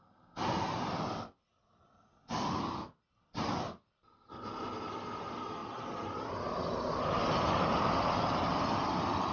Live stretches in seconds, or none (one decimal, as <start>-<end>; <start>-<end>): 0.0-0.7; 4.5-5.6; 6.5-9.3